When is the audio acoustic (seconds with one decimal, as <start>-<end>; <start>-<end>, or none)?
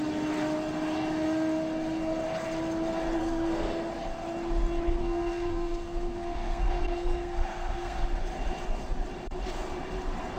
0.0-3.2; 3.9-5.0; 8.1-10.4